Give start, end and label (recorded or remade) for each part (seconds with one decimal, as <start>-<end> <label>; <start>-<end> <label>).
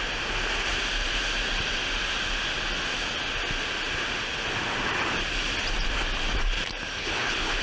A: 0.0-7.0 recorded; 7.0-7.6 remade